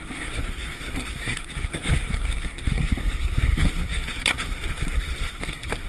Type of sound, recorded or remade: remade